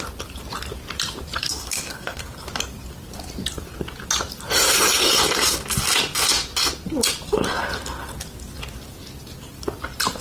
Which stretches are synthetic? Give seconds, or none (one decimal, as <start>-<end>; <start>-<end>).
1.4-2.2